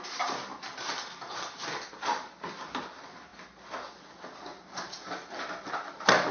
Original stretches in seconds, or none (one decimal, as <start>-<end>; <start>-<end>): 0.0-6.3